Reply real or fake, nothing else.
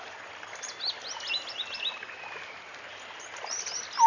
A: real